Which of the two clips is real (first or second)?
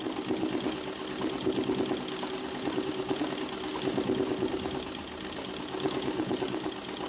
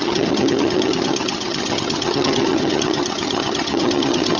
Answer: first